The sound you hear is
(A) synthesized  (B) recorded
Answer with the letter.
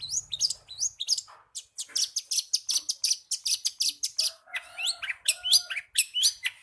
B